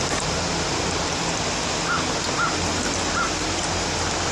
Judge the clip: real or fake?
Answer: real